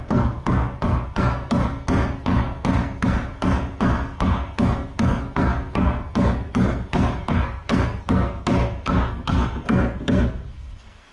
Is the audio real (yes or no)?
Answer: no